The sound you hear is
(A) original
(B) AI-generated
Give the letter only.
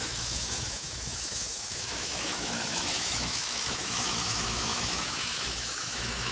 B